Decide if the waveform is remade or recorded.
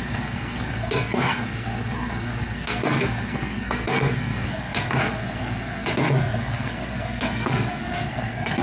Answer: remade